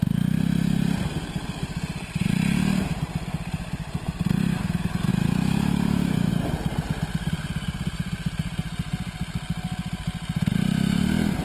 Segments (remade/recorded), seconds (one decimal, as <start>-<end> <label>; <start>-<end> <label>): 0.0-5.1 recorded; 5.1-6.3 remade; 6.3-11.4 recorded